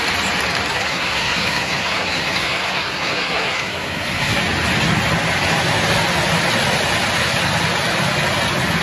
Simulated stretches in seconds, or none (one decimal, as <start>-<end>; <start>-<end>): 0.7-4.4